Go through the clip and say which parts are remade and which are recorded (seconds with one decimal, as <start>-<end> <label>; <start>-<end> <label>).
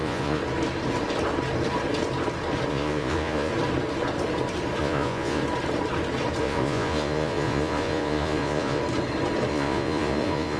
0.0-0.4 remade; 0.4-2.7 recorded; 2.7-3.5 remade; 3.5-4.8 recorded; 4.8-5.4 remade; 5.4-6.4 recorded; 6.4-8.8 remade; 8.8-9.5 recorded; 9.5-10.6 remade